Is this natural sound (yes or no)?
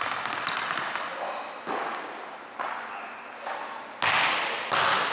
yes